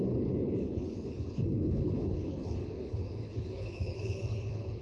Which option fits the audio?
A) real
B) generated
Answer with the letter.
B